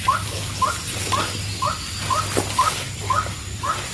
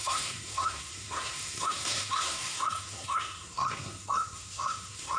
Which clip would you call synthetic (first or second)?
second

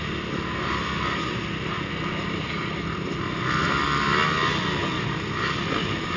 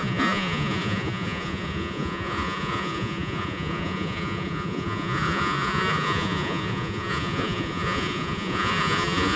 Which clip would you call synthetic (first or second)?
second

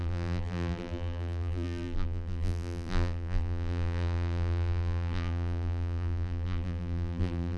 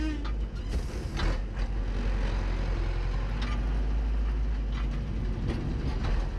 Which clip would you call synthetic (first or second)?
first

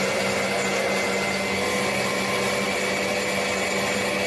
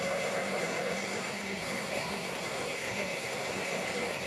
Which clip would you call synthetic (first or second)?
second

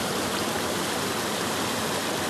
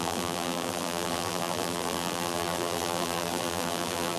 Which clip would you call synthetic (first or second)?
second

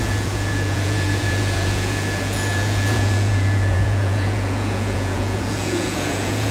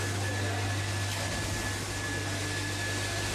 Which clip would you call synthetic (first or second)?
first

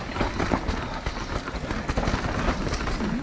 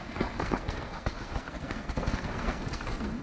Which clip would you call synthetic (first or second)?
second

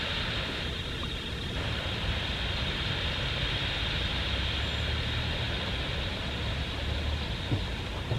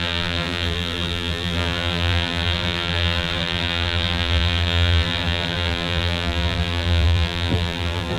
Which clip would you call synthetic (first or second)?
second